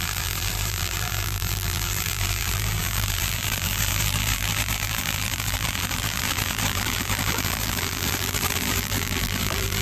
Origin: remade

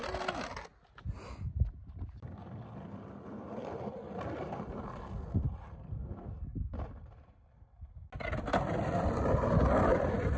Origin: recorded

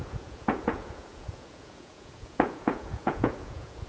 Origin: remade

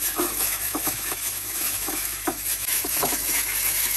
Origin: remade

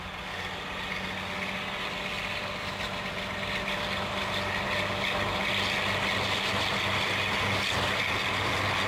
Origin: recorded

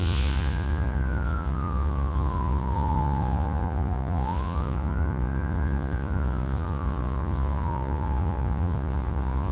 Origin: remade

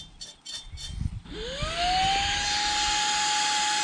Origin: recorded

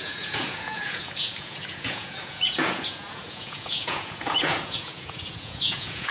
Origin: remade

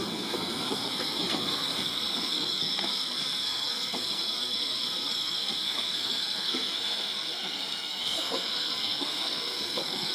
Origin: remade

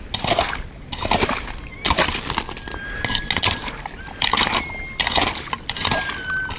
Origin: recorded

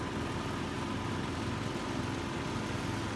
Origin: recorded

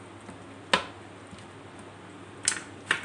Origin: recorded